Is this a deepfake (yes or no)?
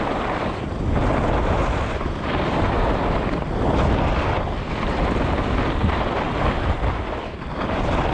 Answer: no